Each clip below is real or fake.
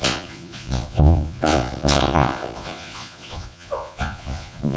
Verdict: fake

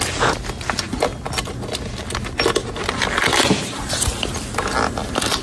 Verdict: real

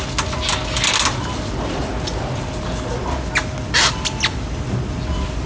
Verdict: real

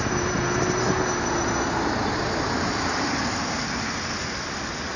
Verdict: real